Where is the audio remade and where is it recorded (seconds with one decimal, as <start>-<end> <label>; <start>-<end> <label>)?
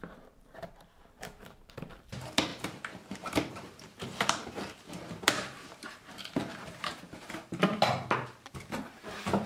0.0-9.5 remade